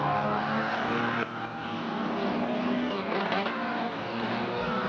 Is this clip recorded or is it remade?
remade